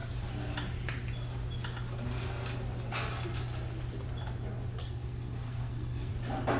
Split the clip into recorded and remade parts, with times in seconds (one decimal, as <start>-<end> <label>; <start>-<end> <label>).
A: 0.0-4.8 recorded; 4.8-6.1 remade; 6.1-6.6 recorded